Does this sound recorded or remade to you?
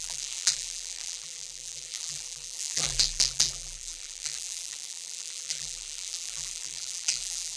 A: remade